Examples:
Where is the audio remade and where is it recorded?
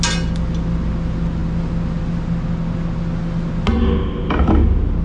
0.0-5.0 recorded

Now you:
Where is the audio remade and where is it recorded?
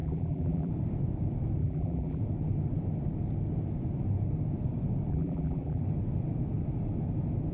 0.0-0.7 remade; 0.7-1.6 recorded; 1.6-2.2 remade; 2.2-5.1 recorded; 5.1-5.8 remade; 5.8-7.5 recorded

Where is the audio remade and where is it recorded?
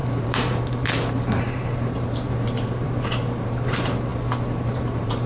0.0-4.1 remade; 4.1-4.7 recorded; 4.7-5.3 remade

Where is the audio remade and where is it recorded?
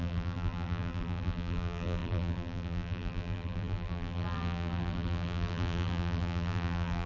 0.0-7.1 remade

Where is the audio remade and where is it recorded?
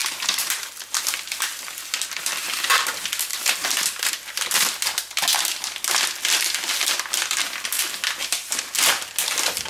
0.0-1.0 remade; 1.0-3.3 recorded; 3.3-4.1 remade; 4.1-8.2 recorded; 8.2-9.1 remade; 9.1-9.7 recorded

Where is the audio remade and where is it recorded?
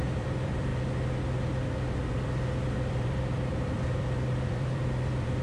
0.0-0.7 remade; 0.7-2.1 recorded; 2.1-5.4 remade